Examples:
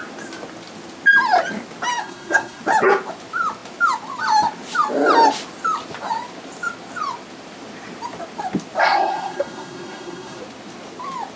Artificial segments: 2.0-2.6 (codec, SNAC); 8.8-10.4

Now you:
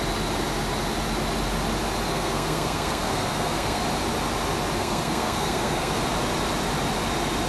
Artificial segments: 2.1-3.8 (codec, SNAC); 4.8-6.0

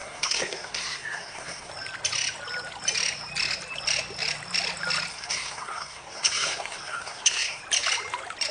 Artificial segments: 0.0-1.7 (codec, SNAC); 5.1-7.6

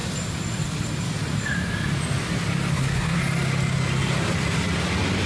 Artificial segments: 2.7-3.2 (codec, SNAC)

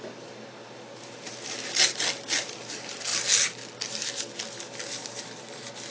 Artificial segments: none

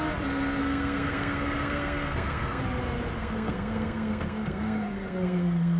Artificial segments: 0.6-2.6 (codec, SNAC); 3.2-5.8

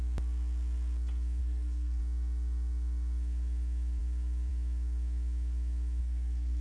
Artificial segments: 1.4-2.0 (codec, SNAC); 6.0-6.6